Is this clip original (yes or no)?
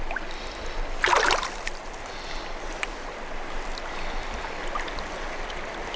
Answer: yes